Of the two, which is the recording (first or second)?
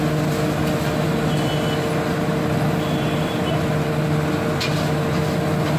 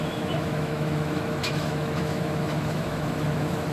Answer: first